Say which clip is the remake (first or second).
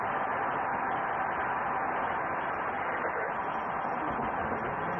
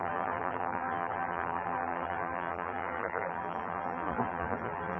second